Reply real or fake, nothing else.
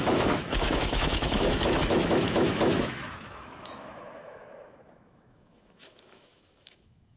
fake